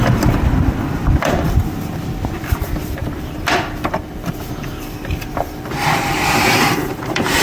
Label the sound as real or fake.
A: fake